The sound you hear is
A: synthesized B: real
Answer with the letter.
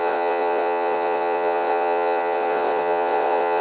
A